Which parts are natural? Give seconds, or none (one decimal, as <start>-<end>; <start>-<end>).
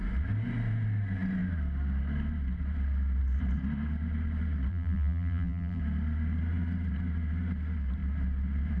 0.0-4.7; 5.8-8.8